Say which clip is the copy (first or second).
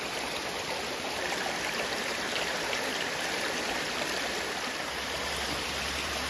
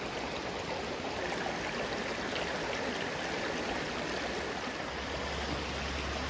first